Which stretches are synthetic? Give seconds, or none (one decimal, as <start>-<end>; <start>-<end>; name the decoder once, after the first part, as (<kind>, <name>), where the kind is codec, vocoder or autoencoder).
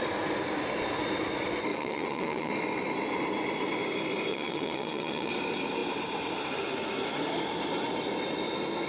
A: 1.7-2.5 (vocoder, WaveNeXt); 4.3-5.3